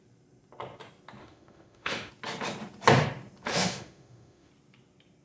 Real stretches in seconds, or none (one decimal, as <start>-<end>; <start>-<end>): 0.0-1.2; 2.1-3.5; 4.5-5.2